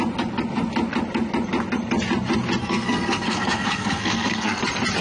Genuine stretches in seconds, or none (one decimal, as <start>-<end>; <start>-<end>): 0.0-2.6; 4.6-5.0